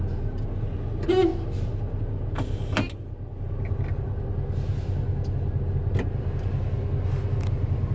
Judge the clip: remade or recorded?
recorded